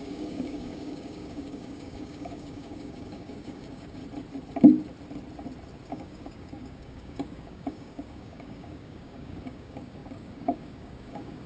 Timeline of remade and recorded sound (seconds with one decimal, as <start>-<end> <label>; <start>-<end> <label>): 0.0-4.0 remade; 4.0-5.9 recorded; 5.9-11.5 remade